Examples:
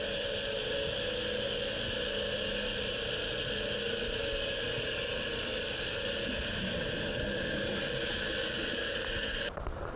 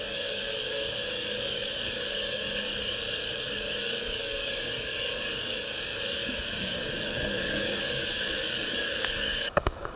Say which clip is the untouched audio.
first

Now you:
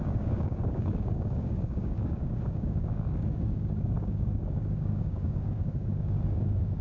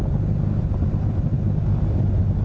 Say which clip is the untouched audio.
second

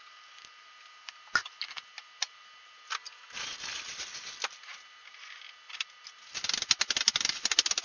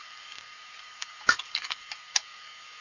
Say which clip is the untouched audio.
first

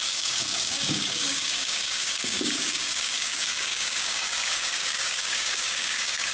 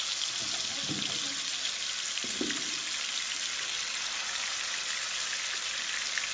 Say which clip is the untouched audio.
second